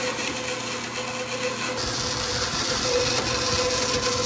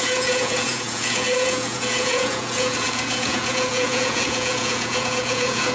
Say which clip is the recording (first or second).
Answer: first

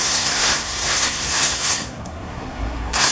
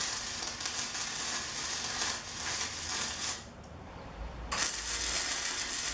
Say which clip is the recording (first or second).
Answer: second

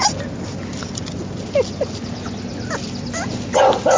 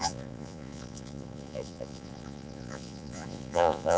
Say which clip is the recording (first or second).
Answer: first